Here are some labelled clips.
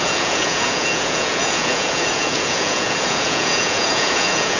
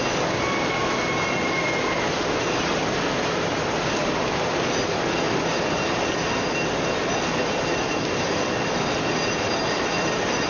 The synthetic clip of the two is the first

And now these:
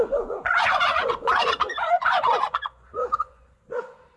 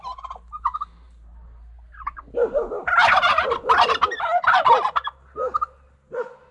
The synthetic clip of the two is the first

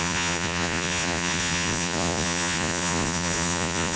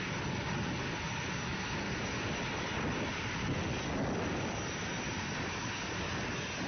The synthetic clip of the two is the first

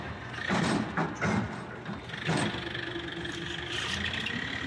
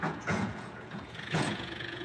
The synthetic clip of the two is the second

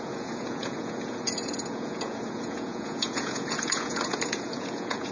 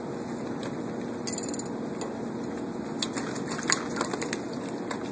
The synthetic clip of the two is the first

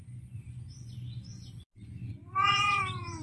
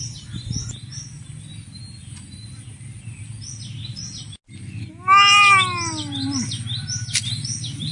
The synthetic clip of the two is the first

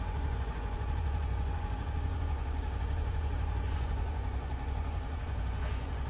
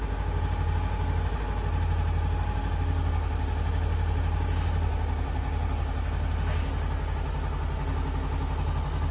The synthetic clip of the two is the first